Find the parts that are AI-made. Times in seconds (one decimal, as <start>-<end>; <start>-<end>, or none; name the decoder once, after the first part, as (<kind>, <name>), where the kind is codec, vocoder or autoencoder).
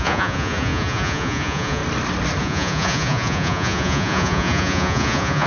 0.0-1.8 (vocoder, Vocos); 2.4-5.5